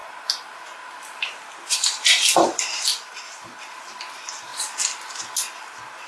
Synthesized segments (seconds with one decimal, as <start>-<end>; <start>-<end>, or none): 1.5-2.9; 3.6-4.5